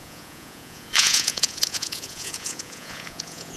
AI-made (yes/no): yes